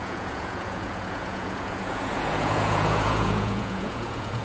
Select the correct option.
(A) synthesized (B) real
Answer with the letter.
A